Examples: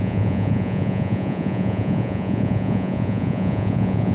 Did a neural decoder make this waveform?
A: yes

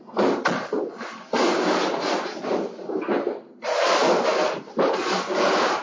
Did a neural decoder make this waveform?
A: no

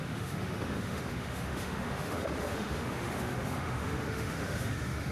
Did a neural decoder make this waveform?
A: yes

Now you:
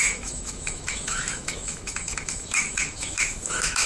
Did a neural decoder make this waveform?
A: yes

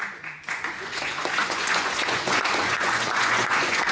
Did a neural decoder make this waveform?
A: yes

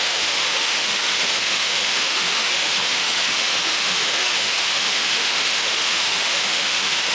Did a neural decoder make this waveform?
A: yes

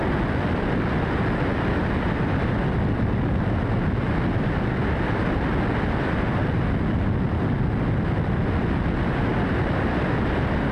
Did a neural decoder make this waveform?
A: no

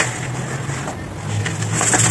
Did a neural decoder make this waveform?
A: no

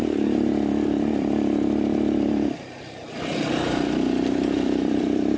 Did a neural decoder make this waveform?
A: yes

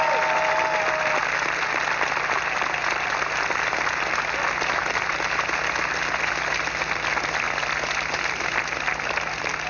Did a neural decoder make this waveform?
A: no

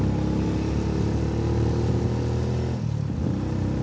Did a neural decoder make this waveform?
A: no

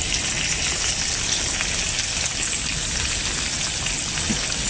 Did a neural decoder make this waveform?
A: no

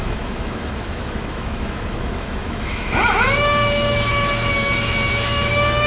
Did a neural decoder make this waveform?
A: yes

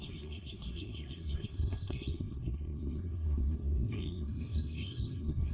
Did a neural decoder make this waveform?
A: yes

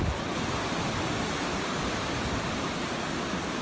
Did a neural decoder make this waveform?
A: no